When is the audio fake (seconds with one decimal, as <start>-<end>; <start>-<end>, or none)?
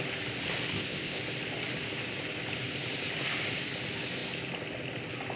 0.7-1.2